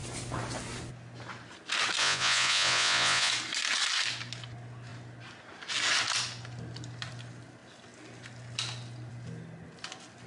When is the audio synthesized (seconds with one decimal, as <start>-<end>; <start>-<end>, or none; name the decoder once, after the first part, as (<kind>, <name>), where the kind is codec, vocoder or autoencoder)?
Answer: 2.0-3.3 (vocoder, Vocos)